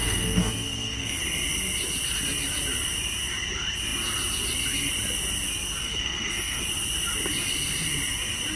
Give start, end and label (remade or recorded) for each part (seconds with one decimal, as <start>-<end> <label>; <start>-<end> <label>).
0.0-1.2 remade; 1.2-5.8 recorded; 5.8-6.6 remade; 6.6-8.6 recorded